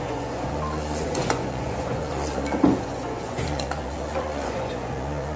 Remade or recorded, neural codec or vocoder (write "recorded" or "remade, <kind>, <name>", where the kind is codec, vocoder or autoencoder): remade, vocoder, Vocos